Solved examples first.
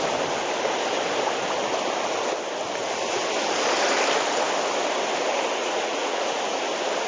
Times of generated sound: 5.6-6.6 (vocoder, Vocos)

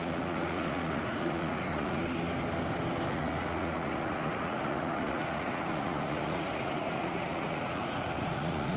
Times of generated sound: 0.0-2.0 (vocoder, Vocos); 3.1-8.8

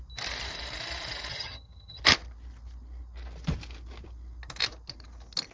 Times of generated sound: 1.3-2.0 (vocoder, HiFi-GAN)

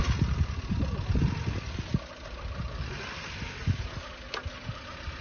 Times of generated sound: 0.7-1.9 (vocoder, BigVGAN v2); 4.5-5.2

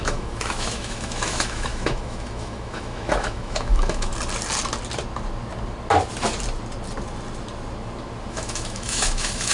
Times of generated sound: 0.0-4.1 (autoencoder, DAC-VAE); 8.3-9.5

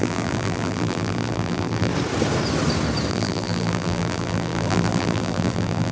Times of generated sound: 0.0-1.9 (vocoder, BigVGAN v2); 3.1-5.9